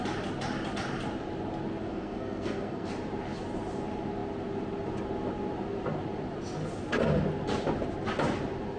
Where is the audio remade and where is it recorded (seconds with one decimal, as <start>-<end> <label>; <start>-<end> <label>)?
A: 0.0-1.8 recorded; 1.8-2.9 remade; 2.9-8.8 recorded